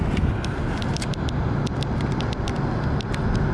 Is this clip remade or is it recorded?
recorded